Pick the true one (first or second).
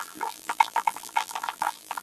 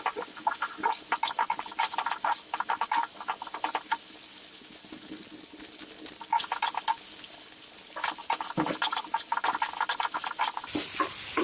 second